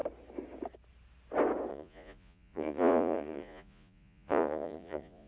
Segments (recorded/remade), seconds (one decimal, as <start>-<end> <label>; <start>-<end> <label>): 0.0-1.7 recorded; 1.7-5.3 remade